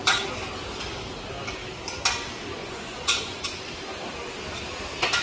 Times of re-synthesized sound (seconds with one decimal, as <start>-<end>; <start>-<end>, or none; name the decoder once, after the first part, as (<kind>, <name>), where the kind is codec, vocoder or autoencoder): 2.6-3.4 (vocoder, Vocos)

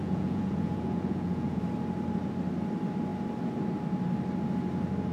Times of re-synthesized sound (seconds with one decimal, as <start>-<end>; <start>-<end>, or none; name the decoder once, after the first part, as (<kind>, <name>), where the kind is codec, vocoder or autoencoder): 0.0-1.6 (vocoder, Vocos)

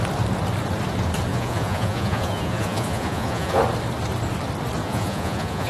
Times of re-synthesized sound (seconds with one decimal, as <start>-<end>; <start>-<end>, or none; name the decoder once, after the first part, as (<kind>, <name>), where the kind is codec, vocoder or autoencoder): 1.3-3.6 (vocoder, Vocos); 4.8-5.7

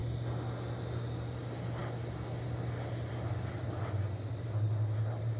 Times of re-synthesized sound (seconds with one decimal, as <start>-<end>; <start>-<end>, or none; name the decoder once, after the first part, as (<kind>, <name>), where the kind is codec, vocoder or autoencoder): none